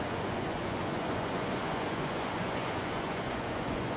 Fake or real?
fake